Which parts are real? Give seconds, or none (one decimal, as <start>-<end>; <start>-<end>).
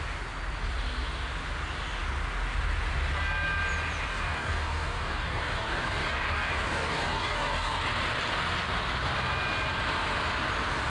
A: 0.0-4.1; 7.8-10.9